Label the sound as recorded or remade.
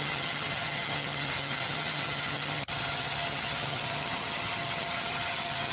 remade